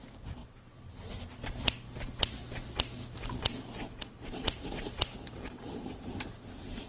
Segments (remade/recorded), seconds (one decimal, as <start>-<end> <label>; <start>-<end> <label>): 0.0-0.4 recorded; 0.4-1.0 remade; 1.0-6.9 recorded